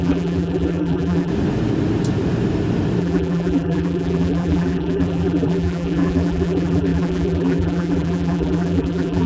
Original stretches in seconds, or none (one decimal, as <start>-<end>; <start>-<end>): 1.3-3.0